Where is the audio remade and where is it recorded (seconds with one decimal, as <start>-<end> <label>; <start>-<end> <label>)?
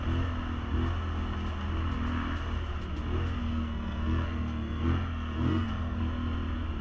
0.0-3.4 recorded; 3.4-6.0 remade; 6.0-6.8 recorded